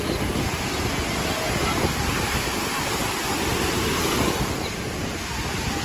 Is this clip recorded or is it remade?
recorded